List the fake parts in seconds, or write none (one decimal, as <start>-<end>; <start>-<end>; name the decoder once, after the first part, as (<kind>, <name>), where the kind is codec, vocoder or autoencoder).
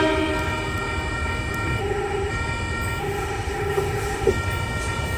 1.8-2.3 (autoencoder, DAC-VAE); 3.0-4.3